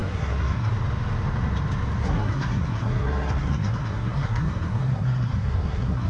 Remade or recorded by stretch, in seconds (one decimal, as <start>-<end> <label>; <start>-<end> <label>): 0.0-0.7 remade; 0.7-2.0 recorded; 2.0-6.1 remade